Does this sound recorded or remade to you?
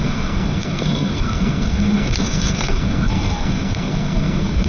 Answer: remade